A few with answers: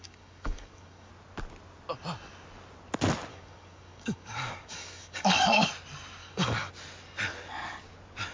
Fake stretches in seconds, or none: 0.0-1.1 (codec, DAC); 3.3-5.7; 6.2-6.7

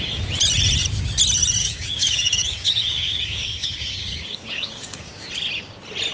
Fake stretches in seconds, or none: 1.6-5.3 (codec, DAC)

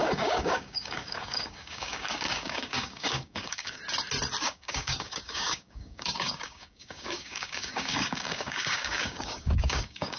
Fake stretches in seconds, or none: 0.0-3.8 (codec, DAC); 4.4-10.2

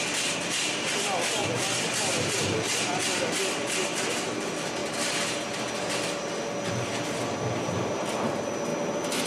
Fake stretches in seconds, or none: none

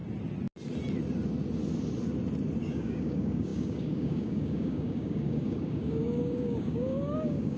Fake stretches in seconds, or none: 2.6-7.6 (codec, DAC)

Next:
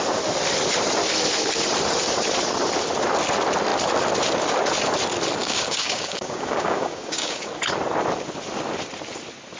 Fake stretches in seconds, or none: 5.4-7.5 (codec, DAC)

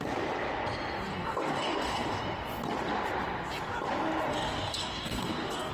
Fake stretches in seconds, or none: 1.1-2.2 (codec, DAC); 4.3-5.7